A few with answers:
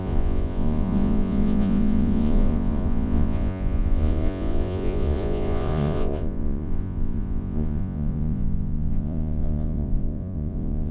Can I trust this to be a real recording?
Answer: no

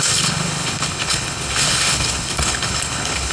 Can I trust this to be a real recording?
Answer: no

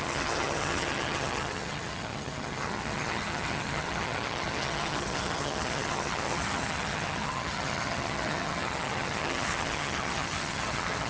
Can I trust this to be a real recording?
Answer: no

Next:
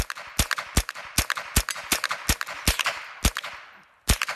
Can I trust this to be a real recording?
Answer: yes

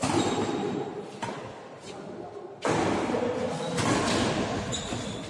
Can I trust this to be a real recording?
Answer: yes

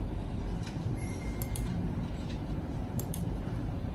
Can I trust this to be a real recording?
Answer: no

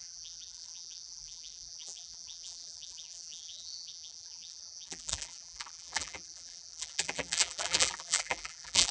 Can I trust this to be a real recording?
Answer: no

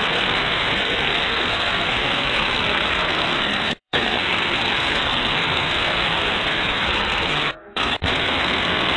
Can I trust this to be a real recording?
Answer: no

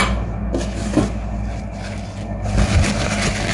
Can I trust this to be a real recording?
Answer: yes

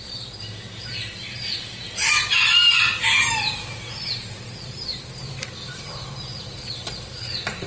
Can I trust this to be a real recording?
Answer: no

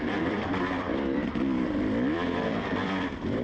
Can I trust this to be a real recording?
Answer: no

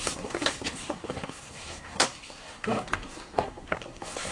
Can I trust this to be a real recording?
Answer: no